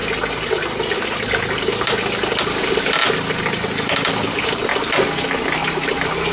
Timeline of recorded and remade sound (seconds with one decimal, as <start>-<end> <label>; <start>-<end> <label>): 0.0-6.3 recorded